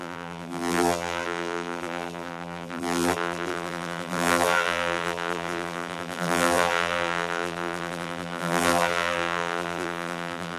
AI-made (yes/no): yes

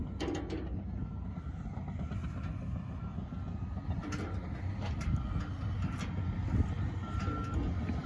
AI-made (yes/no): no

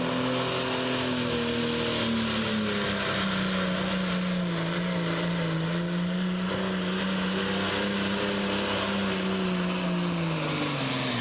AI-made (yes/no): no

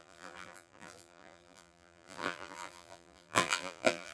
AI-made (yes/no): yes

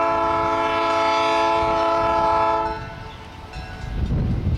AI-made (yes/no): no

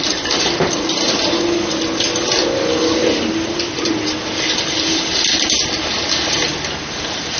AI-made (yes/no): no